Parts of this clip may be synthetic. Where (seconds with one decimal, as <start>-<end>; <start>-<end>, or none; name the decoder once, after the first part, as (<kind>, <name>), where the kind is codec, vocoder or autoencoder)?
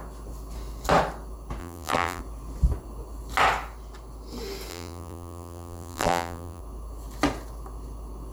1.6-2.2 (vocoder, BigVGAN v2); 4.7-6.6